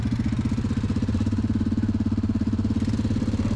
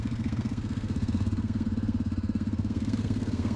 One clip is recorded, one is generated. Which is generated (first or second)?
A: second